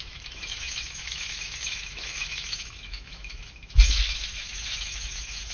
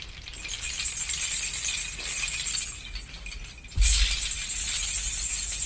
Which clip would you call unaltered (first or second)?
second